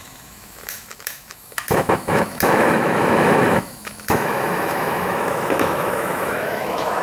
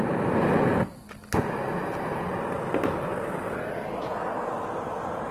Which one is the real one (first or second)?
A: second